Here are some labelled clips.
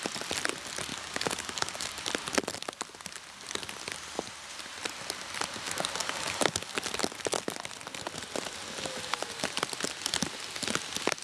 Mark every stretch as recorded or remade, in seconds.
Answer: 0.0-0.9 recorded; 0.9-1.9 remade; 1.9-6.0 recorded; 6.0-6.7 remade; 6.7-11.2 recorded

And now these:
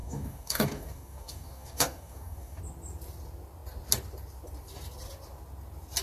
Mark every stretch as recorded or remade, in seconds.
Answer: 0.0-2.6 remade; 2.6-6.0 recorded

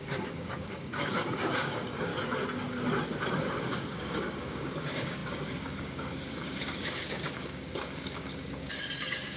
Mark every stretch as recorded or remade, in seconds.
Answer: 0.0-2.1 remade; 2.1-3.6 recorded; 3.6-9.4 remade

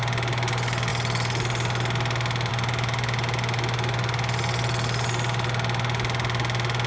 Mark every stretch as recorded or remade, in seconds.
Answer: 0.0-6.9 recorded

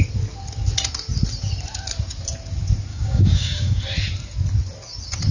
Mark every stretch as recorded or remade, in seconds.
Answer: 0.0-2.9 recorded; 2.9-3.8 remade; 3.8-5.3 recorded